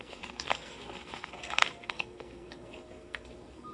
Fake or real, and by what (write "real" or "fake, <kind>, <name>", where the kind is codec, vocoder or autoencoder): fake, codec, SNAC